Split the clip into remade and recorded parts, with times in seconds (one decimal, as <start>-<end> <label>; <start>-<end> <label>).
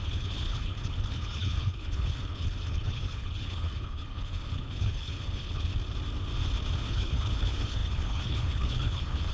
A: 0.0-5.7 remade; 5.7-6.9 recorded; 6.9-9.3 remade